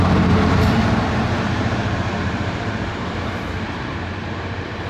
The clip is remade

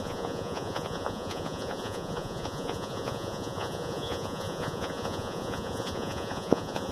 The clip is remade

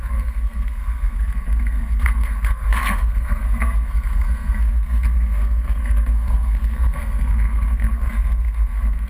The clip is remade